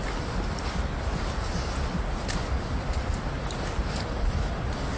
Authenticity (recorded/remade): recorded